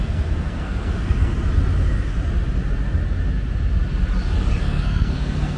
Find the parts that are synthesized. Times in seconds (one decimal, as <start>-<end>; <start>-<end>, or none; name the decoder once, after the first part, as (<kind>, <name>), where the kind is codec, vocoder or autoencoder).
0.0-1.3 (codec, SNAC); 4.6-5.6